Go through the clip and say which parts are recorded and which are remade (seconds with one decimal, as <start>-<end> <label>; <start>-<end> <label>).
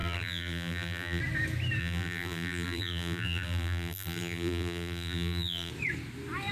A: 0.0-1.2 remade; 1.2-1.8 recorded; 1.8-5.7 remade; 5.7-6.5 recorded